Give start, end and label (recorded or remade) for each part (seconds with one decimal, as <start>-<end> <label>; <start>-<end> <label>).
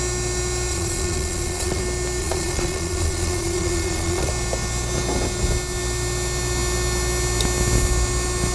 0.0-0.7 recorded; 0.7-1.8 remade; 1.8-2.2 recorded; 2.2-4.3 remade; 4.3-8.5 recorded